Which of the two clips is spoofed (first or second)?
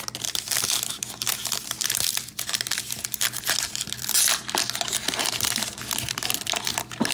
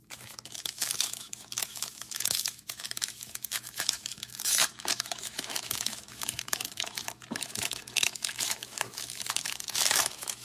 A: second